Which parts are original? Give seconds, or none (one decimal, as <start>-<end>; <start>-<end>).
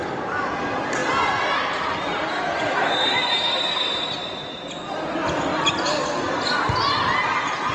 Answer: 0.0-1.0; 3.5-5.5; 6.6-7.7